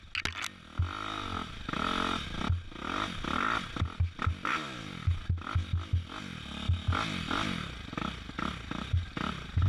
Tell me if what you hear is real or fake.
real